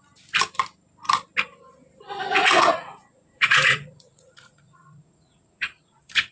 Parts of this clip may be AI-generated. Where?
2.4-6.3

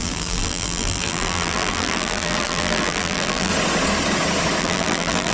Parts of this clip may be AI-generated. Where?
0.0-3.5; 4.6-5.3

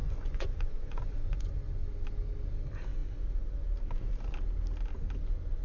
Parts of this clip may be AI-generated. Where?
0.0-1.5

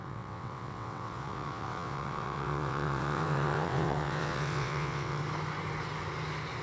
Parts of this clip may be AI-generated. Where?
0.0-5.2

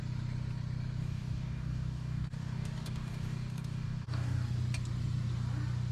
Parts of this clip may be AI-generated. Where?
1.0-4.5

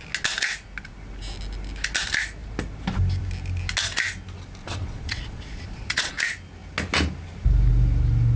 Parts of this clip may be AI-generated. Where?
4.6-6.1

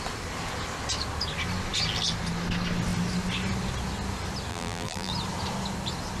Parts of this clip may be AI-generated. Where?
4.5-5.1

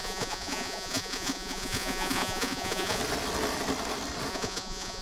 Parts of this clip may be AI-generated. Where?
0.0-3.0; 4.3-5.0